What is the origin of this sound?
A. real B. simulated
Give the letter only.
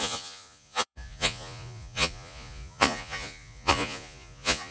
B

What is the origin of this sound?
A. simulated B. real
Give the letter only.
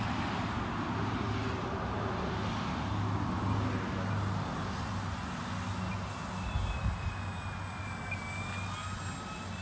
B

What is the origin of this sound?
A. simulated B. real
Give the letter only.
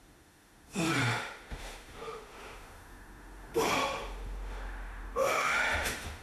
A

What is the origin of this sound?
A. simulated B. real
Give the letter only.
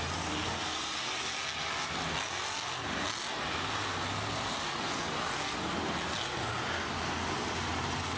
B